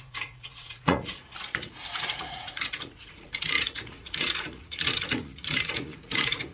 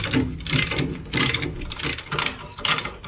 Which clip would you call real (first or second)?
second